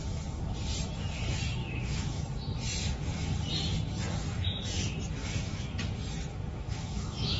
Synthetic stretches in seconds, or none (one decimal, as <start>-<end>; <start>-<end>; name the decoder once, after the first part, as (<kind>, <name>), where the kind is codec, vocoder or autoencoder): 1.6-2.2 (autoencoder, DAC-VAE); 5.2-5.8; 6.3-7.4